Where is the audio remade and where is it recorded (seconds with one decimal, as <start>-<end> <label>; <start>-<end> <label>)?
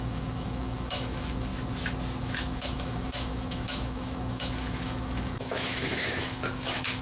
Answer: 0.0-1.5 remade; 1.5-2.2 recorded; 2.2-7.0 remade